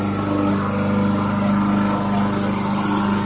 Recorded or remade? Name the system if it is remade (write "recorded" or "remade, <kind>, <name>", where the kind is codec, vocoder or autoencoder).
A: recorded